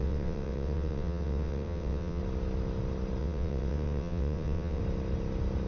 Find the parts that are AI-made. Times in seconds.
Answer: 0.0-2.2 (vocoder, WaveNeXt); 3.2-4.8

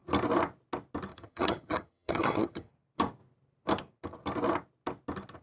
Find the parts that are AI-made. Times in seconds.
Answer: 1.1-2.7 (vocoder, HiFi-GAN)

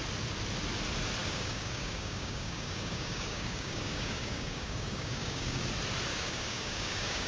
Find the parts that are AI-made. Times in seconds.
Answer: 1.2-5.6 (codec, DAC); 6.1-7.3

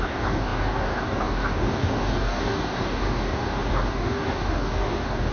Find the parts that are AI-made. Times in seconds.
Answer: 0.0-5.3 (codec, DAC)